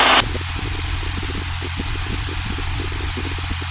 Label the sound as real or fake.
real